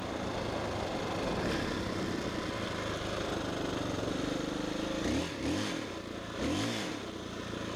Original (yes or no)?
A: yes